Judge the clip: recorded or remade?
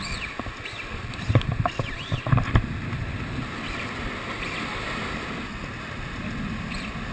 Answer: recorded